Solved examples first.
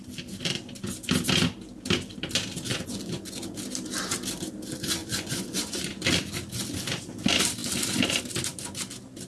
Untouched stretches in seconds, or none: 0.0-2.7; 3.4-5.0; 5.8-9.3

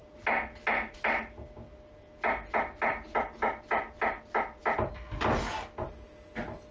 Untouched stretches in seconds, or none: 0.0-6.7